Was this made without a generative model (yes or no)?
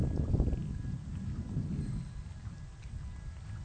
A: yes